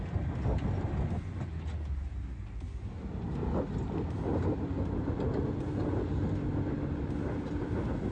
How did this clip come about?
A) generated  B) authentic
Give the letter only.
B